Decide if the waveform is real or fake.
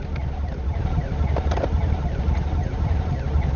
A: real